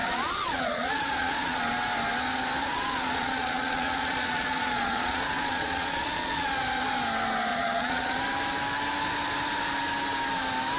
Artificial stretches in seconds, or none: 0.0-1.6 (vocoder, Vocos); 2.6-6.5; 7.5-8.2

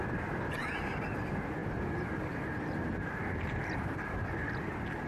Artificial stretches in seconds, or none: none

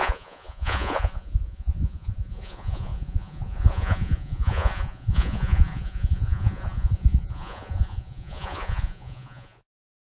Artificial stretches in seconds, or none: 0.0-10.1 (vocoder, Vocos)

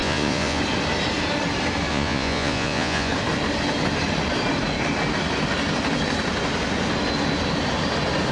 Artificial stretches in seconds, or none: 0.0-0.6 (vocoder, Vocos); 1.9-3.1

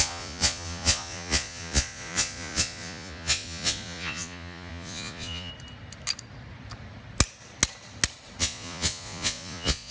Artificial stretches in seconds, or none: 0.0-5.5 (vocoder, Vocos); 8.4-9.9

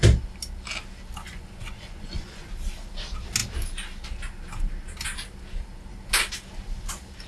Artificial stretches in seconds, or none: 1.2-2.5 (vocoder, Vocos)